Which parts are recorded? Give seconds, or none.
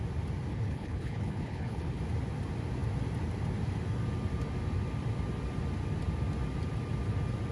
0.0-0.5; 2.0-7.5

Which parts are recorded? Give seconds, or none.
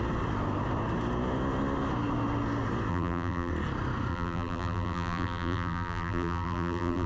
0.0-2.9; 3.5-4.1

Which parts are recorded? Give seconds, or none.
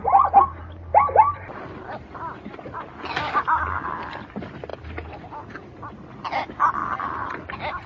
0.0-0.9; 2.5-6.8; 7.5-7.9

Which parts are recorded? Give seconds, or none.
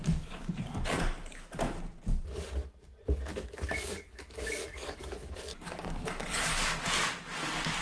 0.6-3.3; 6.3-7.8